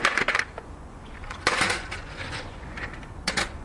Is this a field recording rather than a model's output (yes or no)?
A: no